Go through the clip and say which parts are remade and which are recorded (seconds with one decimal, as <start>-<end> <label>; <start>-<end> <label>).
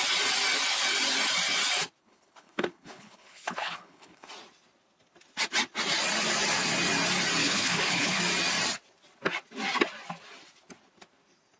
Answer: 0.0-2.0 recorded; 2.0-4.3 remade; 4.3-7.4 recorded; 7.4-8.2 remade; 8.2-11.6 recorded